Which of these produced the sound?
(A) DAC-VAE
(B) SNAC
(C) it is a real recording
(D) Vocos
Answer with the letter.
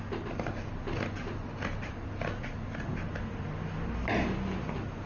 C